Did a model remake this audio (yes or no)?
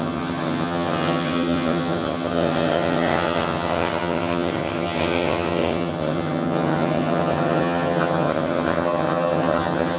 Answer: yes